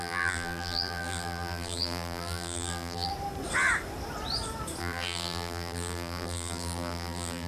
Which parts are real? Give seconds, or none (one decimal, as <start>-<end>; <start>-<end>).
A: 3.1-4.8